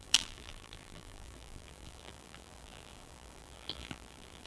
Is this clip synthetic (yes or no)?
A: yes